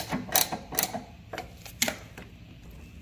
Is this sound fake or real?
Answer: real